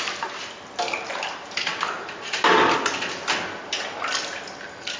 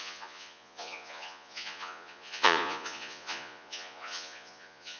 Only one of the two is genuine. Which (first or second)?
first